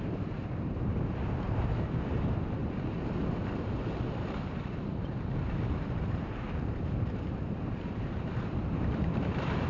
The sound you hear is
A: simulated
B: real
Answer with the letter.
A